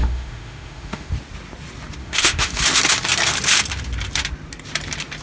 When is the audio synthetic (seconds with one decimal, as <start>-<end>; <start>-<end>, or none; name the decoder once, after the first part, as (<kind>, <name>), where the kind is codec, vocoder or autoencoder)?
0.0-1.1 (autoencoder, DAC-VAE); 2.0-2.6